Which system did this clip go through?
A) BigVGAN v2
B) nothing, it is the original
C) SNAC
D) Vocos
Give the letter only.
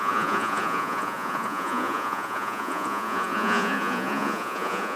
D